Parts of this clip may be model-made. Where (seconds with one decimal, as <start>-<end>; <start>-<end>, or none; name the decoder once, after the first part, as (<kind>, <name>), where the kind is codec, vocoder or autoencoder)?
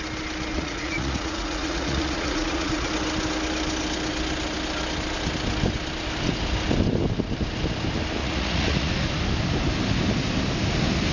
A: 0.5-2.9 (vocoder, Vocos); 8.2-8.9